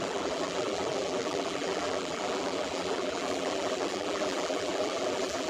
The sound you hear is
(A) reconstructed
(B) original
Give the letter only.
A